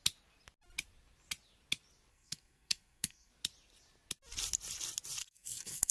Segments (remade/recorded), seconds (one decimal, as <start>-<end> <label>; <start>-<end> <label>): 0.0-2.1 recorded; 2.1-3.3 remade; 3.3-5.2 recorded; 5.2-5.9 remade